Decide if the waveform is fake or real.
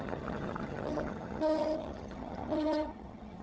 fake